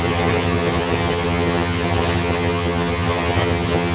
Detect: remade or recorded remade